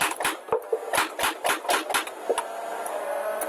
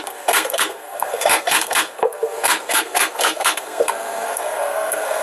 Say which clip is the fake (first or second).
second